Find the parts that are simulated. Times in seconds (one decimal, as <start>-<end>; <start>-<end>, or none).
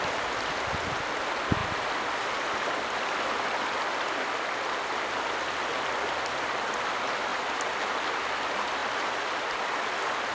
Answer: none